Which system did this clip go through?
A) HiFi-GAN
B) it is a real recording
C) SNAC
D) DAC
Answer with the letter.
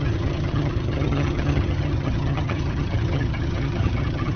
A